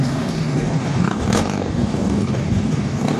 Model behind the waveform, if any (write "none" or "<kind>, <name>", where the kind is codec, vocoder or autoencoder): codec, DAC